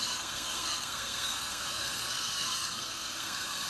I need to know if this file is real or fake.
fake